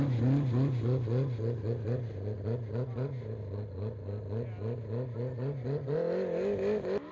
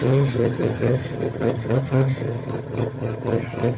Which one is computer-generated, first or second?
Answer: second